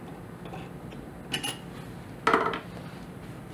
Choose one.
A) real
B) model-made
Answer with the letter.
A